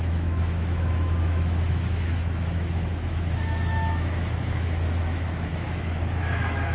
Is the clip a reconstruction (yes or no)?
yes